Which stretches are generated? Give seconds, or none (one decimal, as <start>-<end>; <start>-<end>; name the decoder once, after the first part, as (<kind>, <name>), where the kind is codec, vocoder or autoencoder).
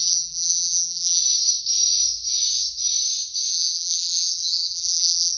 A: 0.0-1.2 (vocoder, BigVGAN v2); 3.5-5.4